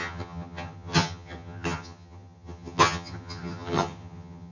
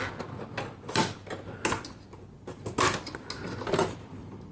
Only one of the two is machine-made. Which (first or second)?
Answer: first